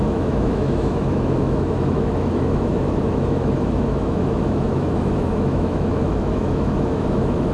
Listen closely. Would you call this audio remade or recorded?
remade